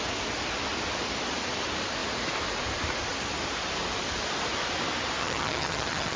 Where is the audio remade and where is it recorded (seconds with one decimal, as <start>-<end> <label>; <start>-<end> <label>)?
0.0-5.2 recorded; 5.2-6.2 remade

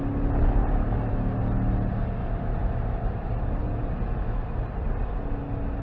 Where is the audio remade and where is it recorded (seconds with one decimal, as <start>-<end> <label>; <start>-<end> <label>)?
0.0-2.6 recorded; 2.6-3.6 remade; 3.6-5.8 recorded

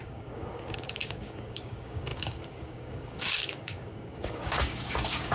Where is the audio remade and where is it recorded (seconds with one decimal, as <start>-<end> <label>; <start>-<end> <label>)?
0.0-5.3 remade

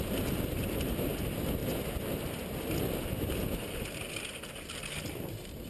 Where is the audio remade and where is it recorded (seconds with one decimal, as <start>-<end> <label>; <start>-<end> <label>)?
0.0-5.7 recorded

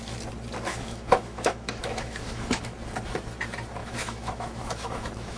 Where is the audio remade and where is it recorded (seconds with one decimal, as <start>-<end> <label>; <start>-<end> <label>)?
0.0-0.7 recorded; 0.7-2.6 remade; 2.6-3.8 recorded; 3.8-5.4 remade